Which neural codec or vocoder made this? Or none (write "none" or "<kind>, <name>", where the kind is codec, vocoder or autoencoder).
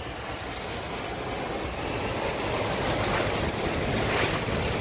none